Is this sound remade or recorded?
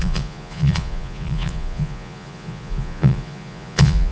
remade